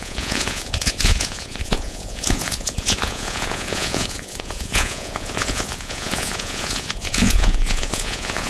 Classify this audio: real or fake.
fake